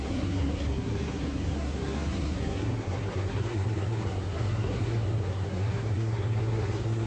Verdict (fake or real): fake